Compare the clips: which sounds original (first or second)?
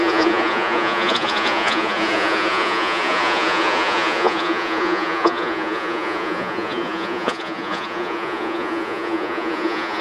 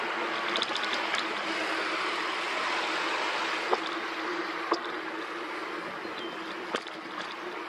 second